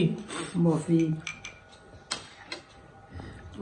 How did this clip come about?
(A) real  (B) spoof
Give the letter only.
A